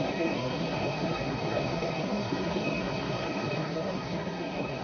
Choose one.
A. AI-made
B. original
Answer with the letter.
A